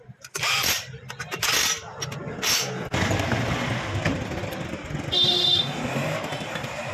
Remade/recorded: recorded